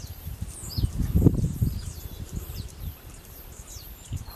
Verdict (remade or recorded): remade